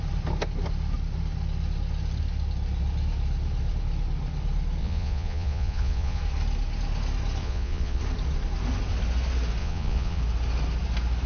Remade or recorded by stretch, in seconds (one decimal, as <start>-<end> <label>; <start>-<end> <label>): 0.0-4.8 recorded; 4.8-6.2 remade; 6.2-7.4 recorded; 7.4-8.0 remade; 8.0-9.6 recorded; 9.6-10.2 remade; 10.2-11.3 recorded